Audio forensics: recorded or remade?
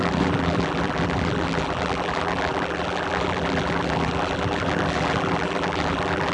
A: remade